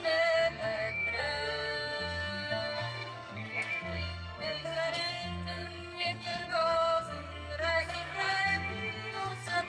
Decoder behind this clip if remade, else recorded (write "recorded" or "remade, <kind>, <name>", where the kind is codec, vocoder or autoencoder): remade, codec, SNAC